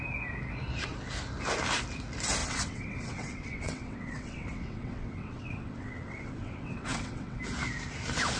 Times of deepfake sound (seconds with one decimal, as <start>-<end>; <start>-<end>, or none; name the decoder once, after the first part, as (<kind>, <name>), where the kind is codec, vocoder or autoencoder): 2.4-7.4 (vocoder, WaveNeXt)